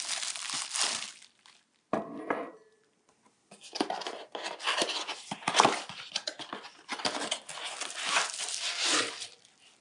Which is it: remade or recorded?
recorded